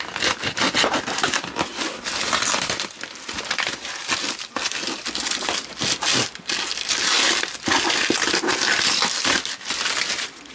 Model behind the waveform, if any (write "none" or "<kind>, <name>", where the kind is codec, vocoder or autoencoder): none